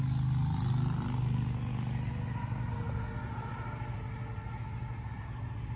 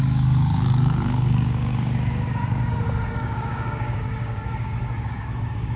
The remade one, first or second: second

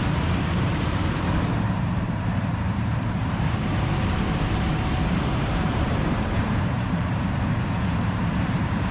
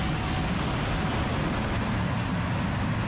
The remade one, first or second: first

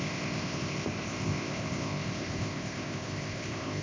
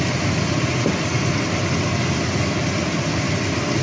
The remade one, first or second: first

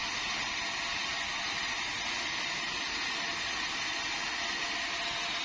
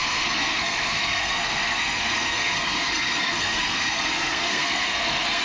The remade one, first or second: second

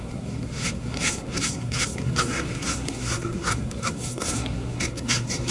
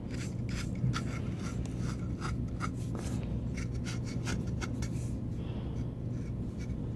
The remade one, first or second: first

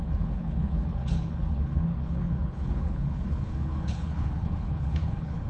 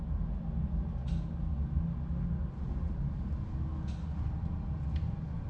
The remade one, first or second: first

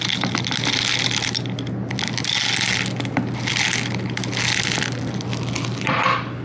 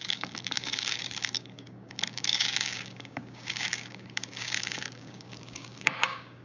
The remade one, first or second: second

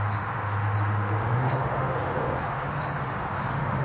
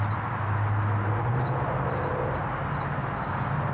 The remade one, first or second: first